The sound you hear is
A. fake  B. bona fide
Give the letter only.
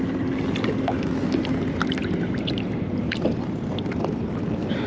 B